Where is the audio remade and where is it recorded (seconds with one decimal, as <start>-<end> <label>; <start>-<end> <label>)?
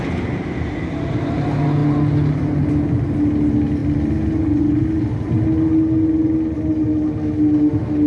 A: 0.0-8.1 recorded